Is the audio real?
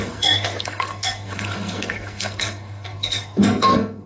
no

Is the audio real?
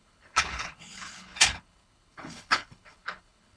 no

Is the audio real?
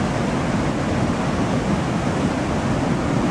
yes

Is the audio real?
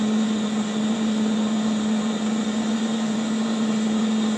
yes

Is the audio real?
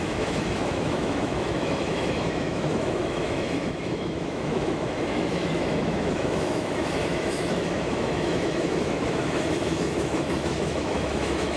no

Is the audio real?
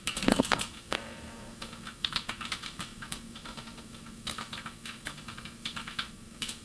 no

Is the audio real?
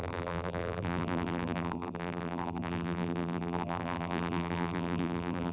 no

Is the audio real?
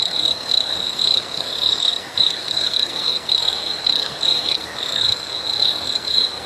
no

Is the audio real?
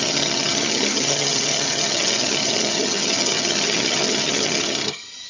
no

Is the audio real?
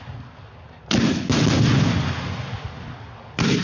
yes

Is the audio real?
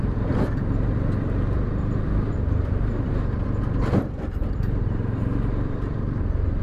no